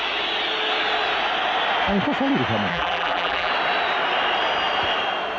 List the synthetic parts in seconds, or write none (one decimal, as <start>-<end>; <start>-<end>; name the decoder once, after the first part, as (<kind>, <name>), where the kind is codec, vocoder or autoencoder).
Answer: 2.7-3.5 (vocoder, BigVGAN v2)